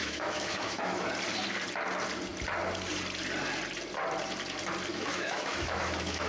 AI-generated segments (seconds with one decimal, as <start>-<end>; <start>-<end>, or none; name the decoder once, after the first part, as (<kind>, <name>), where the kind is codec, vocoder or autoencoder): 0.0-1.1 (autoencoder, DAC-VAE); 4.9-6.3